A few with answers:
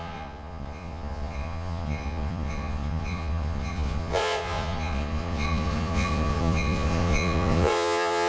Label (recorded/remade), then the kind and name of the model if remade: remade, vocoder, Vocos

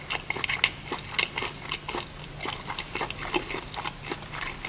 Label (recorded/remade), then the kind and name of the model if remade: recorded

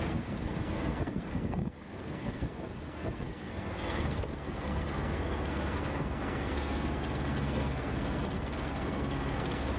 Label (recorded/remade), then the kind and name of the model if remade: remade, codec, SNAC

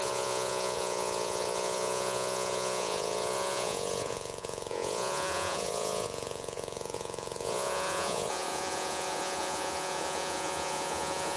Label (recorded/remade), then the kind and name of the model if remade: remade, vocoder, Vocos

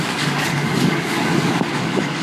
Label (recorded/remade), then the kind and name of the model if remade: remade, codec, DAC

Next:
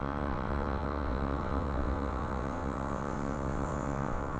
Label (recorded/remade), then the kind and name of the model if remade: remade, vocoder, WaveNeXt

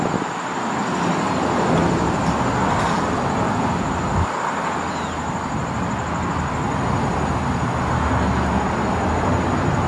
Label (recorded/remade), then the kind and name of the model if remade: recorded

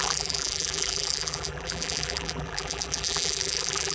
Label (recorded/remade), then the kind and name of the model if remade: remade, vocoder, BigVGAN v2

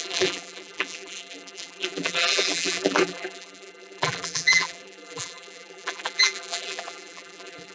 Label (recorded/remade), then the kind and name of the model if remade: remade, vocoder, BigVGAN v2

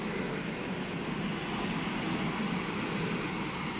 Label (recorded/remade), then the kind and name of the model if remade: recorded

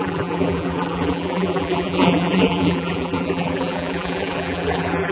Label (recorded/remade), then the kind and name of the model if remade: remade, vocoder, BigVGAN v2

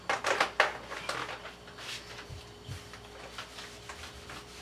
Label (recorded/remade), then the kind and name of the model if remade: recorded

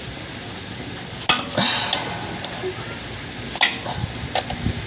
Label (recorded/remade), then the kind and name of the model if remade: recorded